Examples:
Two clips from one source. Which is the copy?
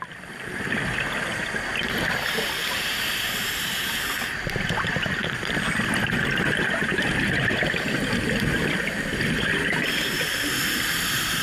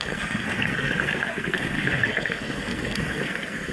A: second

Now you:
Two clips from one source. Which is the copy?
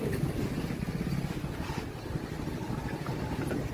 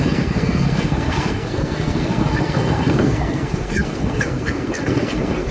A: second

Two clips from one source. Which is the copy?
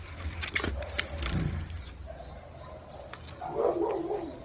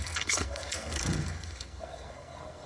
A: second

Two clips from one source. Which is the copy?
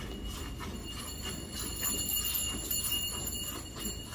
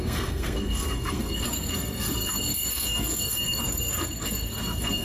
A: second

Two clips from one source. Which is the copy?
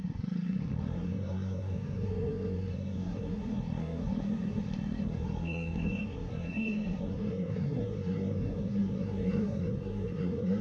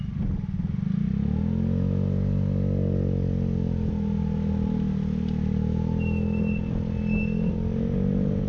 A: first